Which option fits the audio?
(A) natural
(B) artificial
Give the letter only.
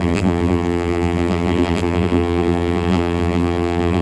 B